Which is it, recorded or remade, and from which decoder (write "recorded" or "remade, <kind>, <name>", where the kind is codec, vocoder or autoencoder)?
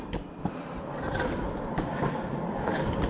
recorded